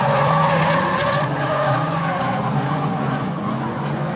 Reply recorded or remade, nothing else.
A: remade